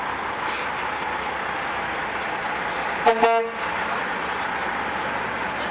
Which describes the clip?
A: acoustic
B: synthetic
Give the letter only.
A